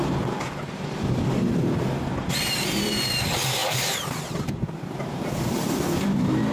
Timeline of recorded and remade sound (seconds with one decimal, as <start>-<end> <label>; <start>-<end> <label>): 0.0-6.5 remade